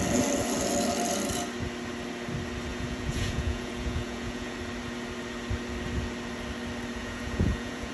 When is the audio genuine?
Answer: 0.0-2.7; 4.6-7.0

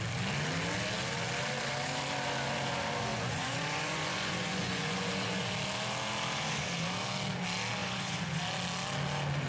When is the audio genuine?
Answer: 0.0-3.1; 5.5-7.8; 8.4-9.5